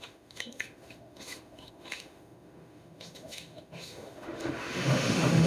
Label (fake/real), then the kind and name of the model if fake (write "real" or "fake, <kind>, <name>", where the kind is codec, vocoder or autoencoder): fake, autoencoder, DAC-VAE